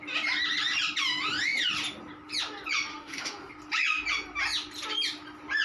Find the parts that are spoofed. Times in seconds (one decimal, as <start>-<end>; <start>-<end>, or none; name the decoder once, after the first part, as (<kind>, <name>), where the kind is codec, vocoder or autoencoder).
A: 2.9-3.5 (autoencoder, DAC-VAE)